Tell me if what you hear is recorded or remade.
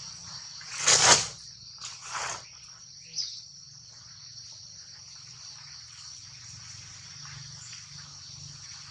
recorded